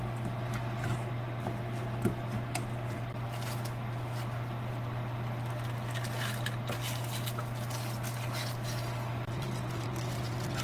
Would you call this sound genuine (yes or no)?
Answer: yes